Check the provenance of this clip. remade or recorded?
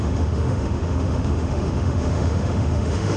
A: remade